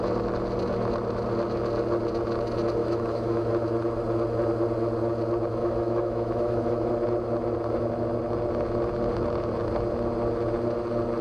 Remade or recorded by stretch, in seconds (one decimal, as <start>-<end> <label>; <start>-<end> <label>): 0.0-2.8 recorded; 2.8-3.5 remade; 3.5-5.6 recorded; 5.6-6.9 remade; 6.9-11.2 recorded